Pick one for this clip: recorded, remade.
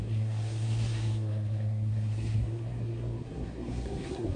remade